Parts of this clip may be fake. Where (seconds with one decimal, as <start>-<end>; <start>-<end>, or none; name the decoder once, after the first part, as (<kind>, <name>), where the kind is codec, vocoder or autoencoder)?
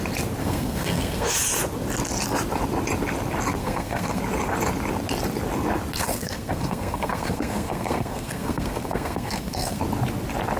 0.4-1.3 (codec, SNAC); 3.6-4.2; 6.0-9.8